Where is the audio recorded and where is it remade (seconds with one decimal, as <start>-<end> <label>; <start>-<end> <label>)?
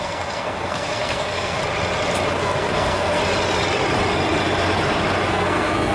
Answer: 0.0-1.6 remade; 1.6-2.3 recorded; 2.3-3.2 remade; 3.2-5.3 recorded; 5.3-5.9 remade